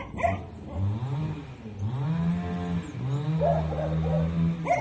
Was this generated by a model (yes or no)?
no